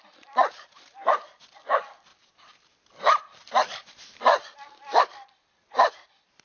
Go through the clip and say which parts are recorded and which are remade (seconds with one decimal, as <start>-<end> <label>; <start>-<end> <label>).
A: 0.0-6.4 recorded